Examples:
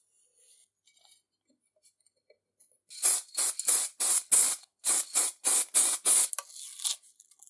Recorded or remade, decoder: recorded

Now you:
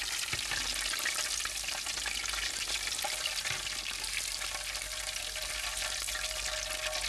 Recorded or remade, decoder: recorded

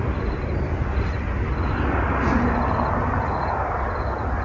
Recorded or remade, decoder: recorded